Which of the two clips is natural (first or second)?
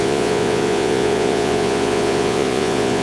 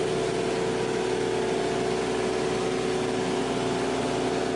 second